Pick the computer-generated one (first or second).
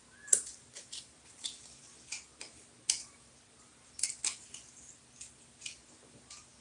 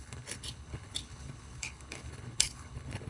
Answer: second